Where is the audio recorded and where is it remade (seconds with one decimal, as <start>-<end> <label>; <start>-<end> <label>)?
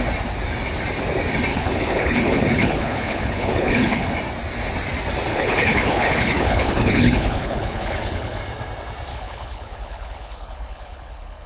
0.0-1.5 recorded; 1.5-4.1 remade; 4.1-5.3 recorded; 5.3-8.4 remade; 8.4-9.1 recorded; 9.1-11.5 remade